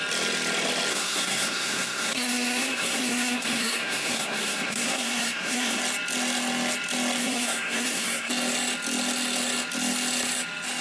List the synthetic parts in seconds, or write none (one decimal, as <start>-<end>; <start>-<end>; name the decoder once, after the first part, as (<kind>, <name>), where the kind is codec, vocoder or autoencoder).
0.9-5.8 (codec, SNAC); 7.2-8.3